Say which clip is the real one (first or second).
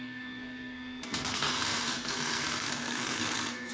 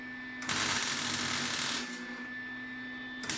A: second